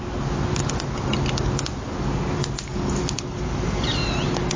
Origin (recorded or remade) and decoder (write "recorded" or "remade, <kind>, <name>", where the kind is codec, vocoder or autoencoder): recorded